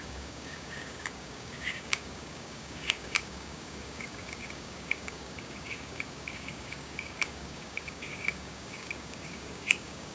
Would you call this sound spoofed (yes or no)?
yes